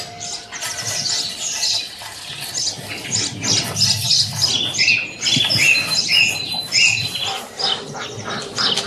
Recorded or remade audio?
recorded